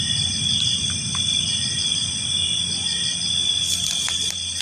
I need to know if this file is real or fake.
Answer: real